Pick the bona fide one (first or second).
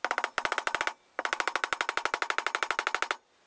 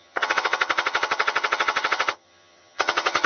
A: first